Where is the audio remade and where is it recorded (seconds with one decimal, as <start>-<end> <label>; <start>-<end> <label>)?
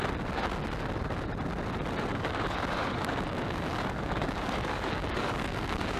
0.0-2.1 recorded; 2.1-6.0 remade